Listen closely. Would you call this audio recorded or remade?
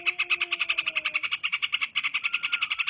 remade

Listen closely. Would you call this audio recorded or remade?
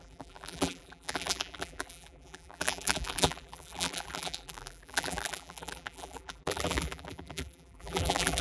remade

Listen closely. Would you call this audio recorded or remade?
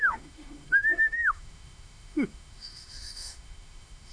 remade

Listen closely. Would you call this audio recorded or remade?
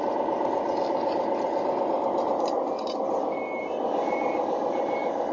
remade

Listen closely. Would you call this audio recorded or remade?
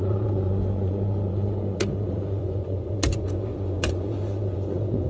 remade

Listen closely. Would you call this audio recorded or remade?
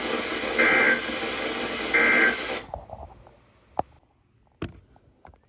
recorded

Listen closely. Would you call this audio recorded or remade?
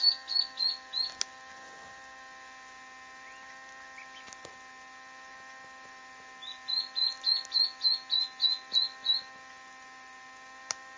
recorded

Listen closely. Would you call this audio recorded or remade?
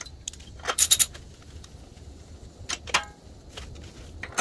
recorded